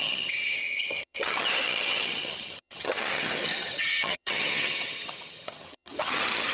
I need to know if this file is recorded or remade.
remade